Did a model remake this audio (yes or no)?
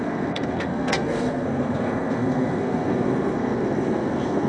yes